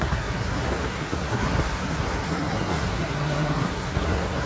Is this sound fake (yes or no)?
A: yes